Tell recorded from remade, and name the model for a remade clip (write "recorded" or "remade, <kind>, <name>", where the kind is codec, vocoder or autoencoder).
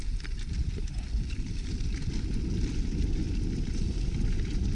recorded